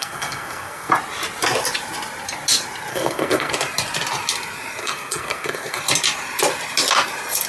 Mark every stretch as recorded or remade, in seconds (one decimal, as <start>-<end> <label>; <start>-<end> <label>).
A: 0.0-0.9 remade; 0.9-2.9 recorded; 2.9-3.5 remade; 3.5-4.8 recorded; 4.8-5.8 remade; 5.8-7.5 recorded